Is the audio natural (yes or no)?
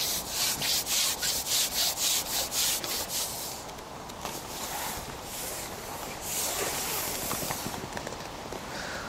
yes